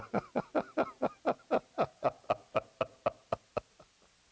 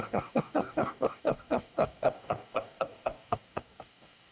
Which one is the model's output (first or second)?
second